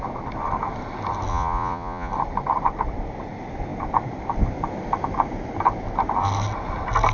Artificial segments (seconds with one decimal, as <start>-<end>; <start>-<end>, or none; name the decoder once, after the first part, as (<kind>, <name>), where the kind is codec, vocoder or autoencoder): 1.3-2.1 (vocoder, Vocos)